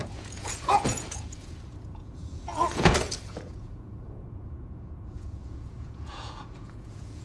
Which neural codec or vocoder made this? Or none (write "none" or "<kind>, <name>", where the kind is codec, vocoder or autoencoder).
vocoder, Vocos